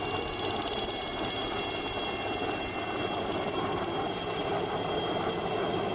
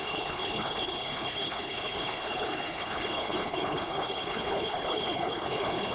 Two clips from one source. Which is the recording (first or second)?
first